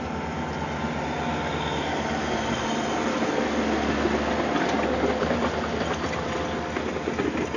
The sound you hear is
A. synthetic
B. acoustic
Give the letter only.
B